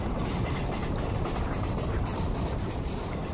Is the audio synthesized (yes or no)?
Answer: yes